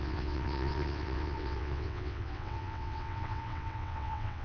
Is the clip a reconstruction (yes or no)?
yes